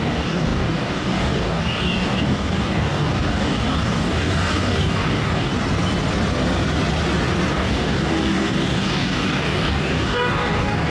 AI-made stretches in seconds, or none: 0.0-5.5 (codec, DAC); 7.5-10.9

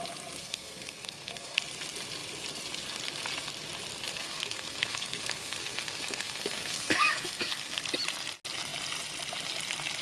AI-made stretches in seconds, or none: 0.4-1.6 (codec, SNAC); 4.1-7.8

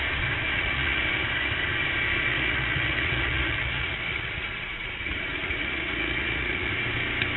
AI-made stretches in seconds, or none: 0.5-1.0 (vocoder, Vocos); 2.3-6.7

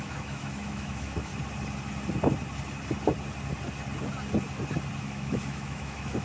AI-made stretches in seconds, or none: 0.0-1.3 (autoencoder, DAC-VAE); 5.0-6.2

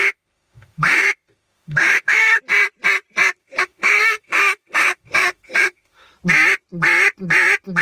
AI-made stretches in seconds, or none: 0.0-2.4 (autoencoder, DAC-VAE); 3.4-6.1

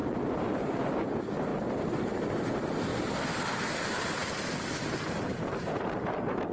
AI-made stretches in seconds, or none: none